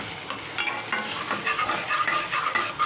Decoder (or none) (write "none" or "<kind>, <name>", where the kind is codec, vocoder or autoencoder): none